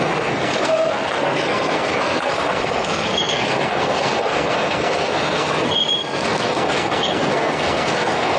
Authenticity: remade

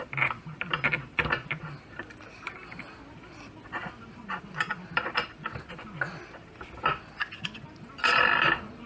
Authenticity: recorded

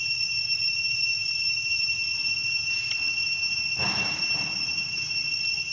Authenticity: recorded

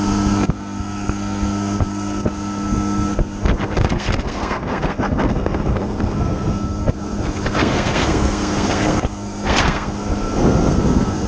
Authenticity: remade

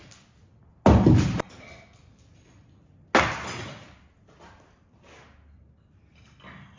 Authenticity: recorded